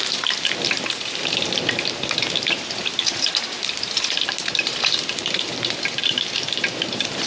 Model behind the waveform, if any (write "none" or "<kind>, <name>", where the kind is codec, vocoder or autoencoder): vocoder, BigVGAN v2